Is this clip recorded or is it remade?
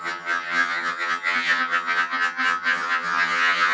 remade